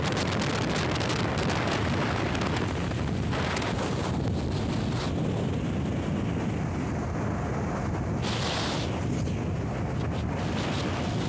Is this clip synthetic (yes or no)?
no